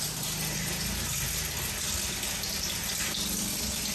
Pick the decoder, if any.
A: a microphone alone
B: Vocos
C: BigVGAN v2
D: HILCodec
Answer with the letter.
A